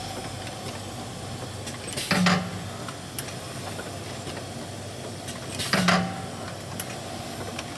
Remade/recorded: recorded